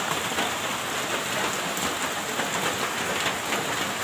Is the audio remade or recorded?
recorded